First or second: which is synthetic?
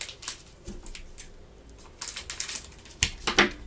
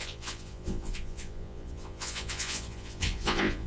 second